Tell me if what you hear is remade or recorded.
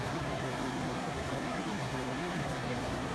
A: remade